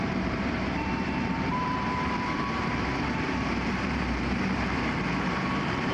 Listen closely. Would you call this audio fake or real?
fake